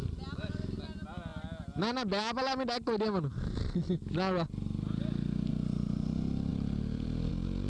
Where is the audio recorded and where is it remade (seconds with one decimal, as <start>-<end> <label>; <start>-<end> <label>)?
0.0-6.5 recorded; 6.5-7.3 remade; 7.3-7.7 recorded